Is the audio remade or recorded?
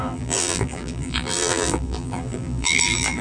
remade